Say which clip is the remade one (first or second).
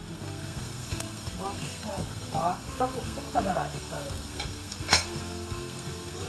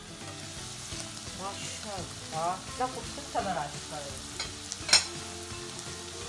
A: first